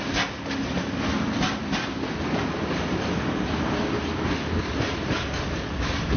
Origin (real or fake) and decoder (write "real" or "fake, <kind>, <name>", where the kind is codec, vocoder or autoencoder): real